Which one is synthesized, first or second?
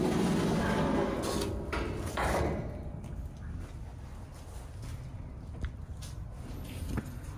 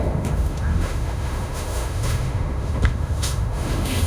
second